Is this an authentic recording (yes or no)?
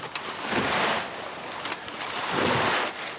yes